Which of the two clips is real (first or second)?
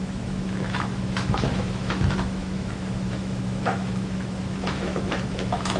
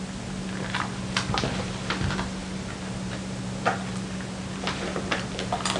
second